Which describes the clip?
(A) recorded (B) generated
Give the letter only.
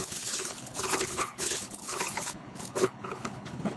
B